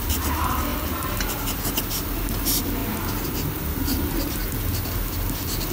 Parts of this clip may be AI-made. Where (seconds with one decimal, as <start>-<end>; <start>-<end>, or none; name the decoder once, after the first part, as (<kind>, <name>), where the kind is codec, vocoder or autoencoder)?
none